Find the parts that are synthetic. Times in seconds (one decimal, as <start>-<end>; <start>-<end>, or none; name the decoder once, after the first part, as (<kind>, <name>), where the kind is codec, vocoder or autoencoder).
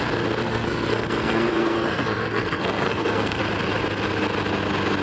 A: 0.4-3.4 (codec, SNAC)